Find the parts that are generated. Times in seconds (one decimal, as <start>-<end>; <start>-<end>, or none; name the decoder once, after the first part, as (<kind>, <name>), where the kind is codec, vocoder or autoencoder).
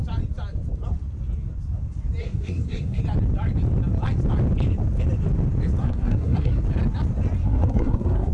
2.2-3.0 (codec, SNAC); 5.8-6.6; 7.4-8.3